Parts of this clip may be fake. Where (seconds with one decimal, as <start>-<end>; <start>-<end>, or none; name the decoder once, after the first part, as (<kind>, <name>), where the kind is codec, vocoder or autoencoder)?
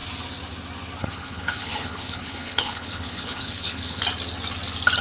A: 1.0-4.0 (codec, HILCodec)